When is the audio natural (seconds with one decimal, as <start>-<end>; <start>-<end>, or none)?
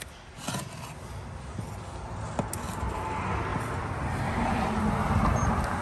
0.0-5.8